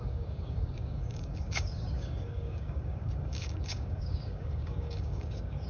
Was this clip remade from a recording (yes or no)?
yes